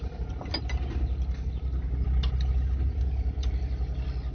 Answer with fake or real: real